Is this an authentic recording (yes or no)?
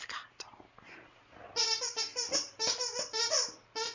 yes